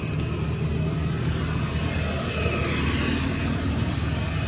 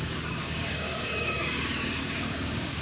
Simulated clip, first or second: second